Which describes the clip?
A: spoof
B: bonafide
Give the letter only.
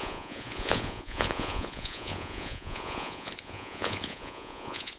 A